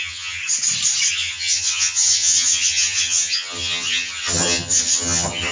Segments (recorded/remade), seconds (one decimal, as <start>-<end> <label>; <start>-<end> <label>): 0.0-0.4 remade; 0.4-1.1 recorded; 1.1-5.5 remade